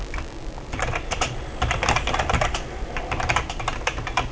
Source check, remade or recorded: remade